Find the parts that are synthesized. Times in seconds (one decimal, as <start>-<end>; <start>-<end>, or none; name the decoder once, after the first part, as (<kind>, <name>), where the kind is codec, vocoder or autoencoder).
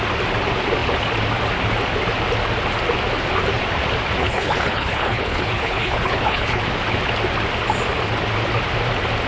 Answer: 4.2-6.6 (codec, HILCodec)